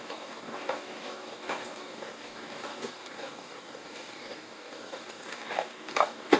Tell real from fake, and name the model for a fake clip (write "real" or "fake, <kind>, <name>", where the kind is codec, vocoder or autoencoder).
fake, codec, DAC